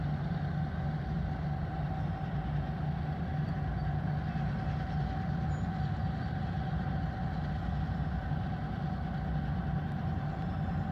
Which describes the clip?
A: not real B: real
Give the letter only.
B